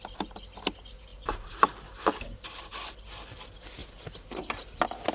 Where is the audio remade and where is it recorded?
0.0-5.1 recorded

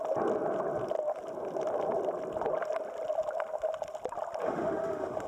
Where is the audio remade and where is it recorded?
0.0-4.4 recorded; 4.4-5.3 remade